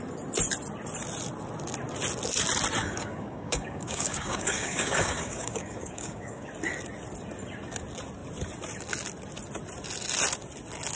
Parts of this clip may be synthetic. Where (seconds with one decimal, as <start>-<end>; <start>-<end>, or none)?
2.8-6.5